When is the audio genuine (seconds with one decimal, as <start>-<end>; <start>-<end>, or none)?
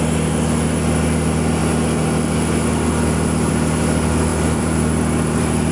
0.0-4.3